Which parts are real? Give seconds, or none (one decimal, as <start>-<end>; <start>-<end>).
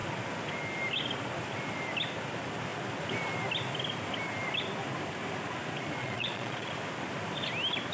0.0-6.0; 6.7-7.9